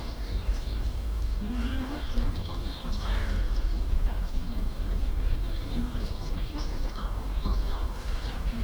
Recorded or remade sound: remade